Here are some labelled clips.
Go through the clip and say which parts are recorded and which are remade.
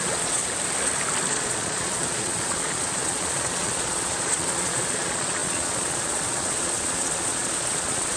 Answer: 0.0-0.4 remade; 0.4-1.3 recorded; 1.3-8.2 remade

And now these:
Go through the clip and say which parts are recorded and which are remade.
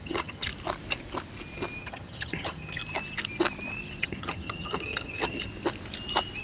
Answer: 0.0-0.5 remade; 0.5-1.8 recorded; 1.8-2.8 remade; 2.8-4.0 recorded; 4.0-5.5 remade; 5.5-6.4 recorded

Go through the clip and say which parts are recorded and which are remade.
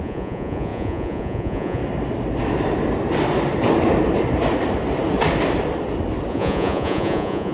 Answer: 0.0-1.8 remade; 1.8-6.3 recorded; 6.3-7.5 remade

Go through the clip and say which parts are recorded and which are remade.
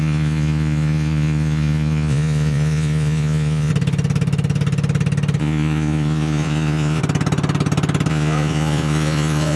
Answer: 0.0-3.7 remade; 3.7-5.4 recorded; 5.4-7.0 remade; 7.0-8.1 recorded; 8.1-9.6 remade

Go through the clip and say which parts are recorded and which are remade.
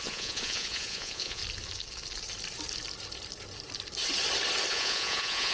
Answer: 0.0-1.4 remade; 1.4-4.7 recorded; 4.7-5.5 remade